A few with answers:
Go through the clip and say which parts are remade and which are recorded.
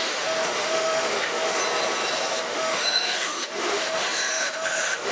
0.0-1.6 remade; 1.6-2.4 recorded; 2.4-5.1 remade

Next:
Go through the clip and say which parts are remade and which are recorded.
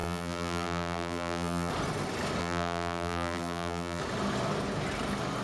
0.0-1.7 remade; 1.7-2.4 recorded; 2.4-4.0 remade; 4.0-5.4 recorded